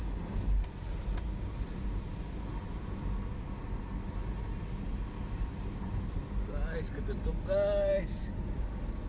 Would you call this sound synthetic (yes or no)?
no